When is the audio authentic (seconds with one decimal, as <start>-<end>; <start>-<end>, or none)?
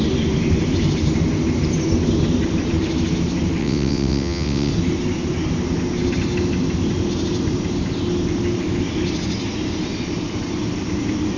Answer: 0.0-3.6; 4.7-11.4